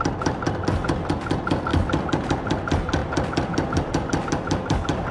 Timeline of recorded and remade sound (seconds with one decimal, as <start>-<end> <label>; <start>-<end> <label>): 0.0-5.1 recorded